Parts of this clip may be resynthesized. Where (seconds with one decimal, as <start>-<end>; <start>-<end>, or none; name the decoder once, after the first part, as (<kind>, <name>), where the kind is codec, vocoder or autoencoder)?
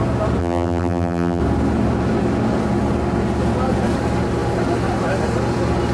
0.4-1.4 (vocoder, BigVGAN v2)